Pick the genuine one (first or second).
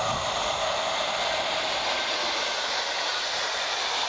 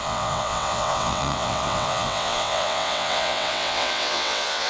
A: first